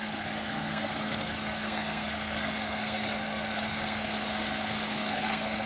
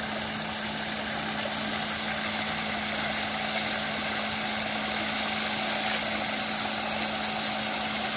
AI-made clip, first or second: first